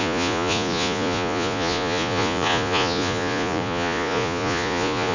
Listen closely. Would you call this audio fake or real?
fake